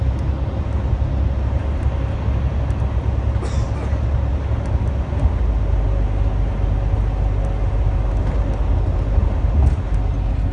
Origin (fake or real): real